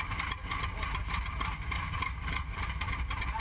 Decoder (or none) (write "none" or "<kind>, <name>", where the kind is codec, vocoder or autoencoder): vocoder, BigVGAN v2